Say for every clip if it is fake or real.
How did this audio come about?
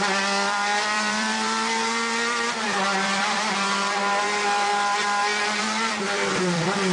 fake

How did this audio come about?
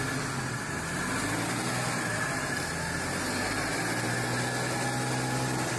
real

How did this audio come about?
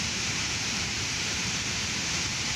fake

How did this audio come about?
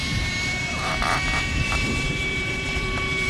fake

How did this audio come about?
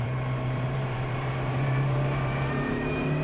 fake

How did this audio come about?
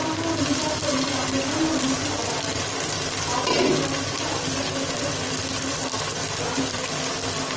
real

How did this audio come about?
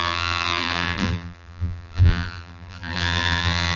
fake